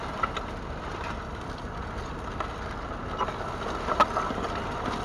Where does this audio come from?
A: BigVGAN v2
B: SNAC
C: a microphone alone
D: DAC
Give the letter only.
C